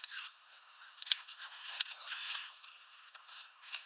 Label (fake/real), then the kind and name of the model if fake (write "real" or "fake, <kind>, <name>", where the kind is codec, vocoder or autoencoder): fake, codec, SNAC